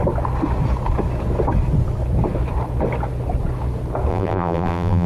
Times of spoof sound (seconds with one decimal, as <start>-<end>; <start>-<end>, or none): 4.1-5.1

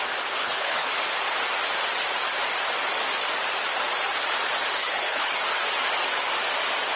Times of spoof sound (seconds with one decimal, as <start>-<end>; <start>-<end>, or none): 0.4-0.9; 4.8-5.4

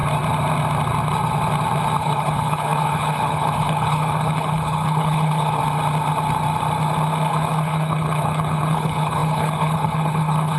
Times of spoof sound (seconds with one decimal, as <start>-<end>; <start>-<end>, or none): 2.0-5.6; 7.3-10.6

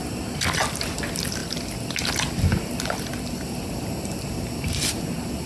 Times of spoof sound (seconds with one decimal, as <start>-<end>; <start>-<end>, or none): none

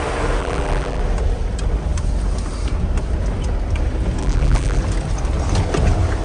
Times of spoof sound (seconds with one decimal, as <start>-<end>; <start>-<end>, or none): 0.4-1.0; 4.2-4.8

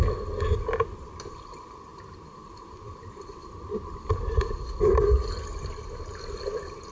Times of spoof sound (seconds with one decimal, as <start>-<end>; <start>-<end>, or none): none

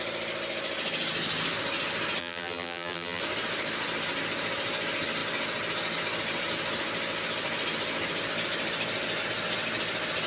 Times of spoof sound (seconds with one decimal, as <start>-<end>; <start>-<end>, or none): 2.2-3.2

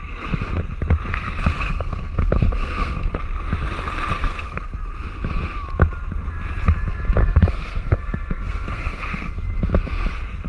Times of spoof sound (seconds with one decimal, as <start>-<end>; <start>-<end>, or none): 1.1-3.2; 4.1-4.7; 7.2-9.3